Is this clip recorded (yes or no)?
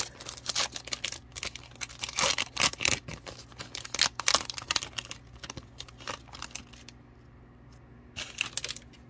yes